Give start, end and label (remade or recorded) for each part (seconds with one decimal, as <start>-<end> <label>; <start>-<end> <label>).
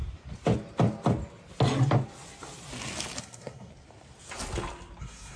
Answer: 0.0-3.2 recorded; 3.2-3.7 remade; 3.7-5.0 recorded; 5.0-5.4 remade